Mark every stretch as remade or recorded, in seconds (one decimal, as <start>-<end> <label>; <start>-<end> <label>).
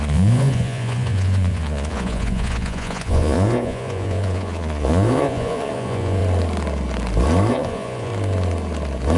0.0-6.2 remade; 6.2-7.5 recorded; 7.5-8.1 remade; 8.1-9.2 recorded